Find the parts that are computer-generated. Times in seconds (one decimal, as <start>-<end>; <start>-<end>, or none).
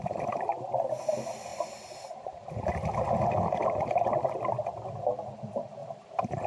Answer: 5.8-6.5